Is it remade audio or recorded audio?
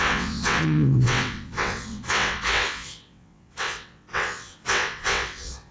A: remade